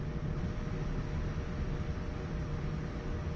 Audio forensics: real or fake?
real